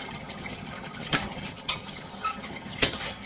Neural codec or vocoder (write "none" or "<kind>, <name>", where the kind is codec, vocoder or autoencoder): vocoder, HiFi-GAN